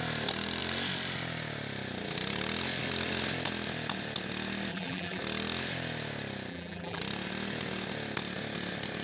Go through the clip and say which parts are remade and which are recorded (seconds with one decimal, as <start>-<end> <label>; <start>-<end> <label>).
0.0-4.7 recorded; 4.7-5.2 remade; 5.2-6.5 recorded; 6.5-7.0 remade; 7.0-9.0 recorded